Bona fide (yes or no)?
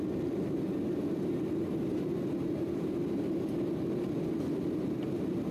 yes